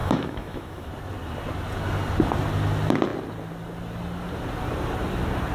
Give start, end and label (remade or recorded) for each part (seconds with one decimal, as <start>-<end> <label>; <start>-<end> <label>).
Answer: 0.0-0.9 remade; 0.9-5.5 recorded